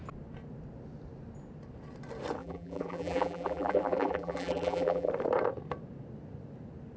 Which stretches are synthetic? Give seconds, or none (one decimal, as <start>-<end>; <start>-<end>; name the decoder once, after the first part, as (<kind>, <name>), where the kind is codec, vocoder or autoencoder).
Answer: 2.4-5.1 (vocoder, BigVGAN v2)